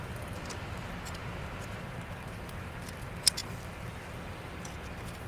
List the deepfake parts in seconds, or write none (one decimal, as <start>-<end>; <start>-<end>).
none